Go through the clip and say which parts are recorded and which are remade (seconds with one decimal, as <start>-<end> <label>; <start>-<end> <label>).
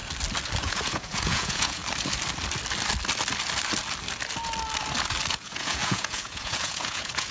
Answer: 0.0-0.6 recorded; 0.6-1.8 remade; 1.8-5.3 recorded; 5.3-7.3 remade